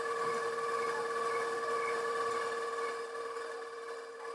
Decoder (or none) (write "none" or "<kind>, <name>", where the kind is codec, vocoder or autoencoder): none